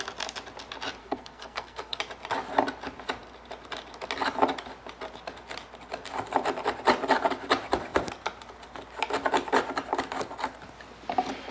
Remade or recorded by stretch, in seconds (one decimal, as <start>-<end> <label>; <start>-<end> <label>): 0.0-1.0 recorded; 1.0-2.0 remade; 2.0-11.5 recorded